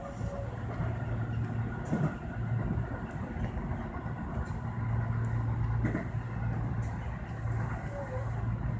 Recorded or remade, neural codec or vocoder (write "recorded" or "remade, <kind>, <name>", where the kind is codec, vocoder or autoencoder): recorded